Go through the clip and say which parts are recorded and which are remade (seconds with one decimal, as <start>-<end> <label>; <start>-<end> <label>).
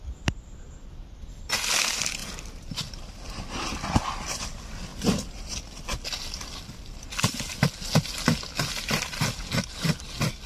0.0-2.2 recorded; 2.2-3.2 remade; 3.2-10.5 recorded